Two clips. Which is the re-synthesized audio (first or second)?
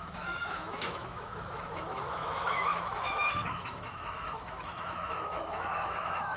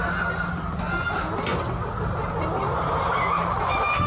first